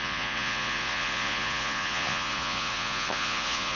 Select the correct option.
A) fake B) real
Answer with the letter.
A